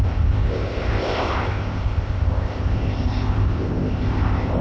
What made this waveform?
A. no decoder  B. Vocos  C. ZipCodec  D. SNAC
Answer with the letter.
C